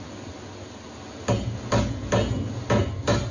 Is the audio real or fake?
real